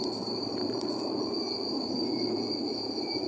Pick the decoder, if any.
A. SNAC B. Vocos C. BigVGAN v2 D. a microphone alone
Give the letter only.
C